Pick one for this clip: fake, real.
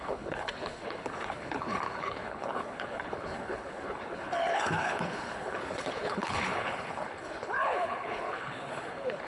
fake